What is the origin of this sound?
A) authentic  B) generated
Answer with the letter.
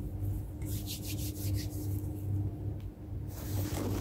A